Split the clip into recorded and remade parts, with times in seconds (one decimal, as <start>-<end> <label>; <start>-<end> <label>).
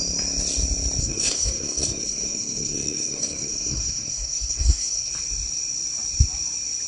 0.0-1.0 recorded; 1.0-5.1 remade; 5.1-6.9 recorded